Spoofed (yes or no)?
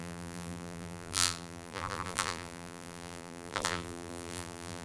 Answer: yes